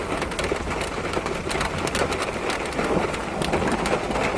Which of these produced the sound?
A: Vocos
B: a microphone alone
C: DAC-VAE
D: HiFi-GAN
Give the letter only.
B